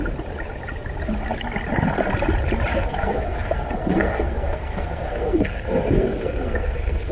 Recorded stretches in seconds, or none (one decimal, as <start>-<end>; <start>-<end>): 0.0-2.7